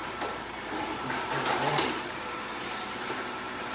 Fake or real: fake